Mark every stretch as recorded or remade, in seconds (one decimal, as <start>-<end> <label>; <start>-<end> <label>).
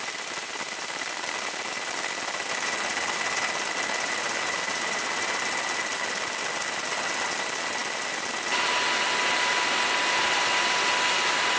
0.0-11.6 recorded